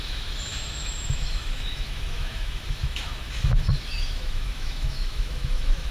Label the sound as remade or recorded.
remade